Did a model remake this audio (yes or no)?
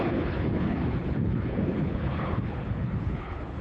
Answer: yes